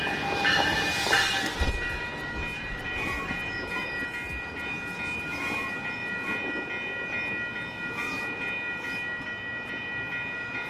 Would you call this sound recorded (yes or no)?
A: yes